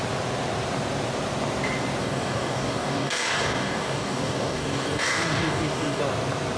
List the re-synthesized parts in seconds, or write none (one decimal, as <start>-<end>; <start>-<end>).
2.0-6.0